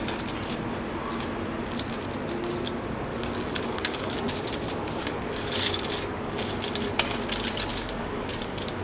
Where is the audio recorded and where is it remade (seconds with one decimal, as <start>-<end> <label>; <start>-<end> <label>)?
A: 0.0-3.1 recorded; 3.1-6.4 remade; 6.4-7.7 recorded; 7.7-8.8 remade